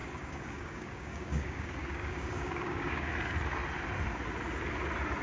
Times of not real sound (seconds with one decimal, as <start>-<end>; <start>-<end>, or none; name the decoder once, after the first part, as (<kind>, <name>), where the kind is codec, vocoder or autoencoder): 0.0-3.1 (codec, DAC)